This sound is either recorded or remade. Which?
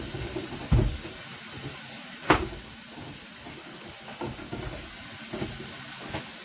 recorded